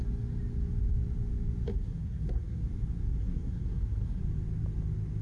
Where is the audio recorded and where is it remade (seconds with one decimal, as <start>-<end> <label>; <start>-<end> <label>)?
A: 0.0-1.7 recorded; 1.7-2.6 remade; 2.6-3.2 recorded; 3.2-4.2 remade; 4.2-5.2 recorded

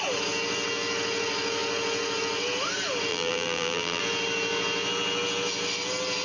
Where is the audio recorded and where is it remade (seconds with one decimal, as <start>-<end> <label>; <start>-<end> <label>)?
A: 0.0-3.1 recorded; 3.1-4.0 remade; 4.0-6.2 recorded

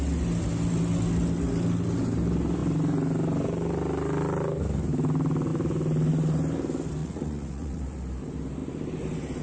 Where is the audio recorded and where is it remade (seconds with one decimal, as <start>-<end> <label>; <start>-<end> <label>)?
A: 0.0-7.0 recorded; 7.0-7.8 remade; 7.8-9.4 recorded

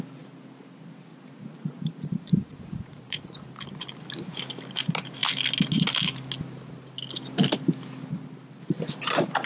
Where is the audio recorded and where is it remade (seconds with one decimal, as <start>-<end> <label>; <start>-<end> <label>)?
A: 0.0-1.1 recorded; 1.1-3.5 remade; 3.5-9.5 recorded

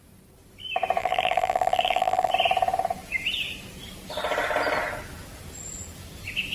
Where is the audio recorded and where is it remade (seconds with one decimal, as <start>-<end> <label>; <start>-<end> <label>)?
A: 0.0-1.0 recorded; 1.0-2.3 remade; 2.3-6.5 recorded

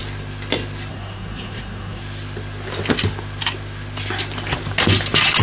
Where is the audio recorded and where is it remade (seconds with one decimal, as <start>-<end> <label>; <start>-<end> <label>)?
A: 0.0-0.9 recorded; 0.9-2.0 remade; 2.0-5.4 recorded

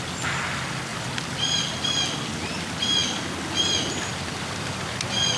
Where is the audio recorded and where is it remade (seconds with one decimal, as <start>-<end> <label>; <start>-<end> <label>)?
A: 0.0-5.4 recorded

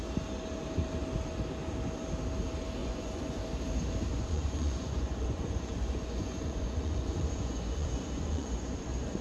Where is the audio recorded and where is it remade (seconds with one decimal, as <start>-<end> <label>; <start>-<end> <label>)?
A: 0.0-2.8 recorded; 2.8-3.4 remade; 3.4-4.1 recorded; 4.1-9.2 remade